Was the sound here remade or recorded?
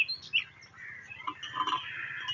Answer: recorded